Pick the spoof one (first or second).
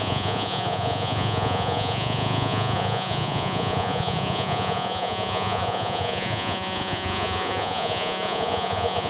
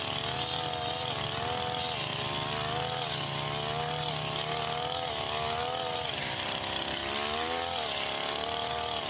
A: first